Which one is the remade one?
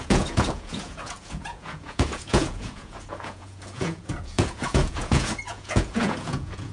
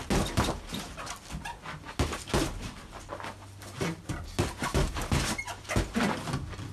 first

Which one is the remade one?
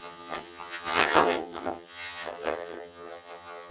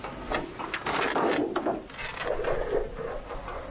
first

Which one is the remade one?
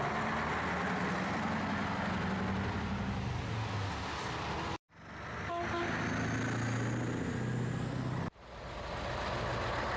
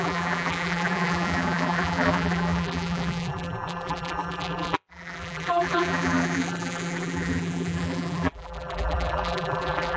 second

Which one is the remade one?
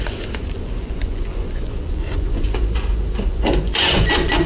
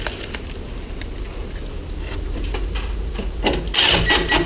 first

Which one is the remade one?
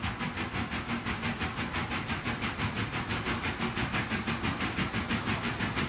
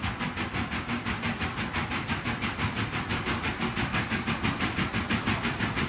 second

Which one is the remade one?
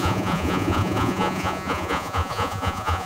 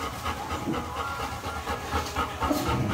first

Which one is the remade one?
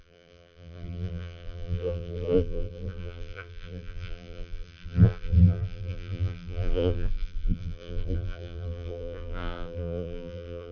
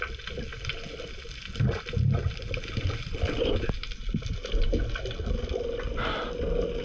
first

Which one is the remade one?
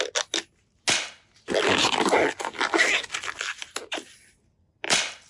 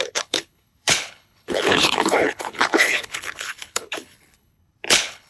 second